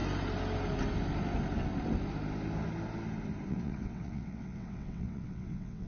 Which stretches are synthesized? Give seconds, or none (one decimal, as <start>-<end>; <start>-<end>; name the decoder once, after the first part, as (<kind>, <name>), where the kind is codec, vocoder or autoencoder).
3.5-5.9 (vocoder, WaveNeXt)